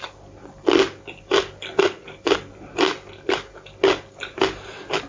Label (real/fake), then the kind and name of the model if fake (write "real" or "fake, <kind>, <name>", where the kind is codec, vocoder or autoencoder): real